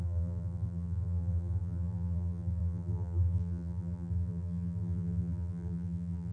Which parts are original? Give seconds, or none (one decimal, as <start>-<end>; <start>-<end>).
none